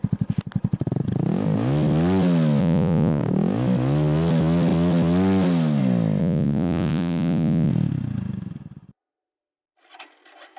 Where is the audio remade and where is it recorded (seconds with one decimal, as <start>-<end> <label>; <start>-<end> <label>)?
0.0-2.6 recorded; 2.6-3.2 remade; 3.2-6.2 recorded; 6.2-7.7 remade; 7.7-10.6 recorded